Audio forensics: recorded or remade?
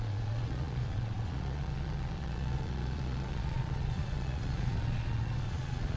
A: remade